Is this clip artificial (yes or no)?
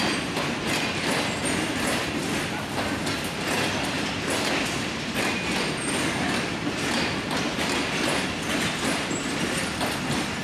no